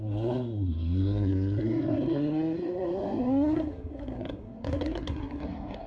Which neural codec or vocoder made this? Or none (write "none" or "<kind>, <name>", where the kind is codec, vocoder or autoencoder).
codec, SNAC